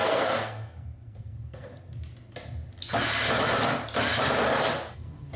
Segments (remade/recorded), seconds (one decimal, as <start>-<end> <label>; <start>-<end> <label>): 0.0-1.7 remade; 1.7-4.9 recorded; 4.9-5.4 remade